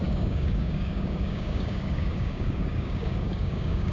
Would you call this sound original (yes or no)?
no